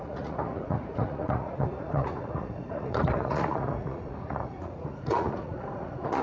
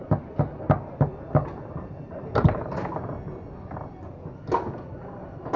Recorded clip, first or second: second